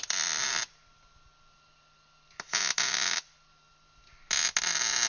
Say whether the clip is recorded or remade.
recorded